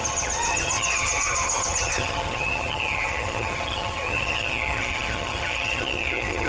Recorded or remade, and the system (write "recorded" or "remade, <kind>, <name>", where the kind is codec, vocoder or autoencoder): remade, vocoder, HiFi-GAN